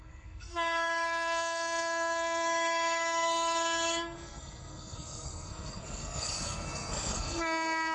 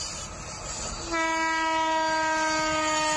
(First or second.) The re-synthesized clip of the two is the first